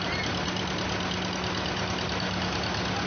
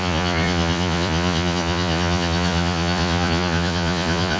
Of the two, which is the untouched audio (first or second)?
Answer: first